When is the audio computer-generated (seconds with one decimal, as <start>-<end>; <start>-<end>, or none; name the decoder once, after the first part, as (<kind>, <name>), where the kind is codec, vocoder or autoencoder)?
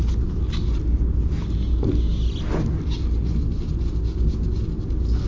none